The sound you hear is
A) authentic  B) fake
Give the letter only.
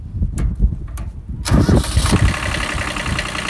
A